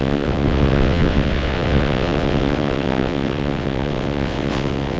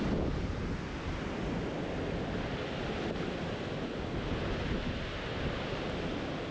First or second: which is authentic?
second